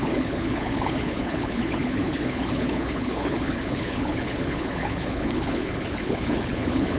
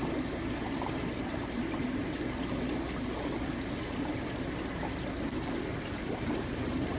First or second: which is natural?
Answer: second